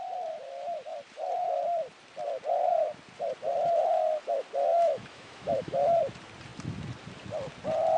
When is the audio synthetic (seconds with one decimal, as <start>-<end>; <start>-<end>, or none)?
4.7-6.0